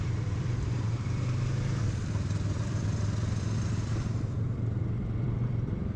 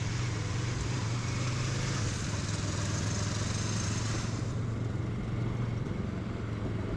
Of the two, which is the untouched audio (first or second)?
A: second